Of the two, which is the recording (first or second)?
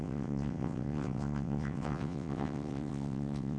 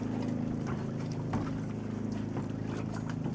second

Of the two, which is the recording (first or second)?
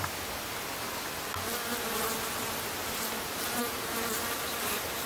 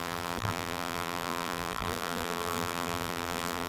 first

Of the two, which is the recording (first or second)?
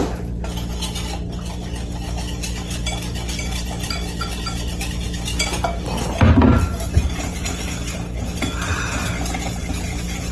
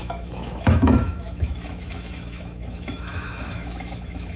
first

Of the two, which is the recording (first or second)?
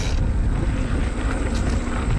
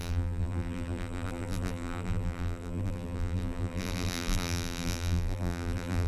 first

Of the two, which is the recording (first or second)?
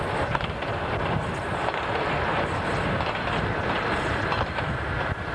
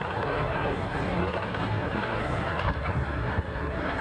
first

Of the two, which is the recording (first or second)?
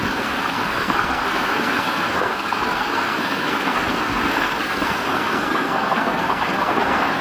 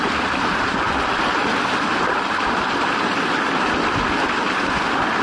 second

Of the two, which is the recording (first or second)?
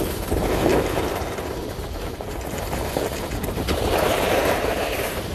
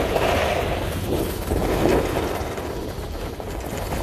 second